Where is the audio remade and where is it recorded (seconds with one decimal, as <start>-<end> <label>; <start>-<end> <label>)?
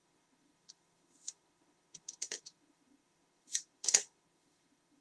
0.0-5.0 remade